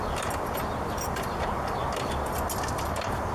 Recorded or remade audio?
recorded